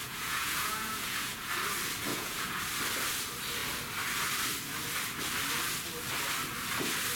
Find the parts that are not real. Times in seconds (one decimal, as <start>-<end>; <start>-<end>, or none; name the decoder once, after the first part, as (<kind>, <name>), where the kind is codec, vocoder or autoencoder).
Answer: 0.0-1.5 (vocoder, Vocos); 2.1-2.6